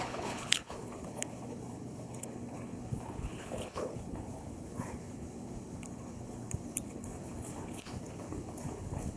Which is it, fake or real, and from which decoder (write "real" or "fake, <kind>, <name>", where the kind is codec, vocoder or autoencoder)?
fake, codec, HILCodec